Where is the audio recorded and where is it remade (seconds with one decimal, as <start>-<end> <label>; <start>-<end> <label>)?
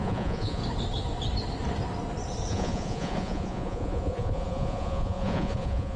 0.0-0.6 remade; 0.6-2.5 recorded; 2.5-6.0 remade